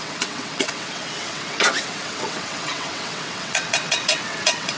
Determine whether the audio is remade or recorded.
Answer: remade